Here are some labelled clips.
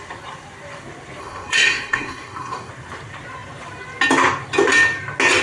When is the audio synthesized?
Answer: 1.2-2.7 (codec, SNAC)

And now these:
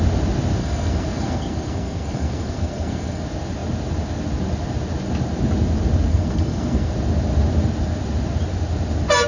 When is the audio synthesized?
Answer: 0.6-3.2 (codec, SNAC); 6.1-6.9

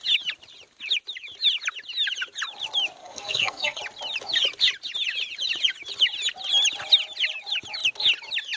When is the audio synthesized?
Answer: 3.0-3.8 (codec, SNAC)

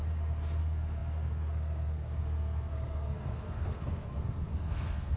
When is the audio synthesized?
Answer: 0.6-5.2 (codec, SNAC)